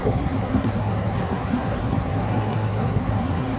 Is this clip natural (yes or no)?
no